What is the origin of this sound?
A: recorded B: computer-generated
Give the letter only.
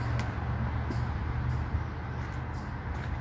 A